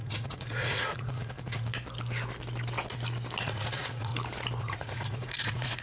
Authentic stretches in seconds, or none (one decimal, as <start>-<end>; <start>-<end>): 1.7-3.4; 4.1-4.6